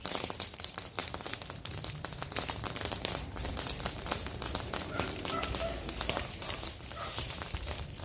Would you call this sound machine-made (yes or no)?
yes